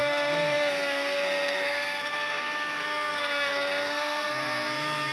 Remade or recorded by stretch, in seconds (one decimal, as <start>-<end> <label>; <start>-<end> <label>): 0.0-5.1 remade